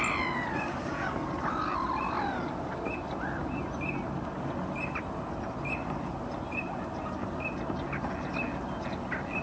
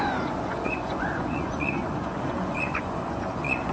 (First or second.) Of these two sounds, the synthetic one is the second